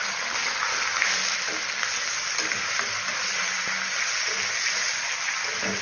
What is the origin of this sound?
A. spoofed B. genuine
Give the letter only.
B